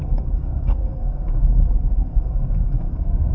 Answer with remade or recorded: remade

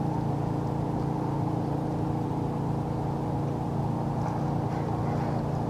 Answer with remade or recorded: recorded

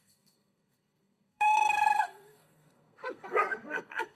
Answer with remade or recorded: remade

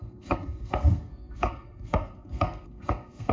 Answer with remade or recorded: remade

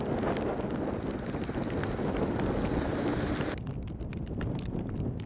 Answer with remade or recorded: recorded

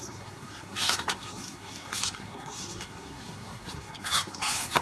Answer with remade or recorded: remade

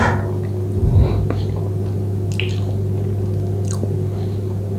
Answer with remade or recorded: recorded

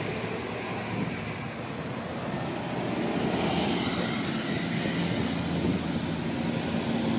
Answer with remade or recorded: recorded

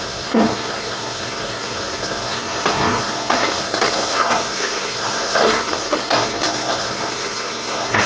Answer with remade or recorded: remade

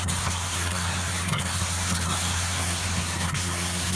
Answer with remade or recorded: remade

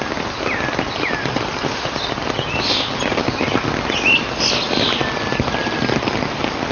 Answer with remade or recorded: recorded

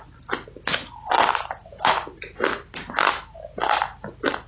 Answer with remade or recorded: recorded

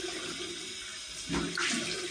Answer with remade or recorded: recorded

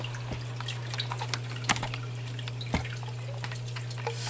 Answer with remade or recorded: recorded